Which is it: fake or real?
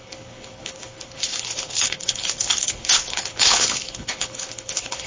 fake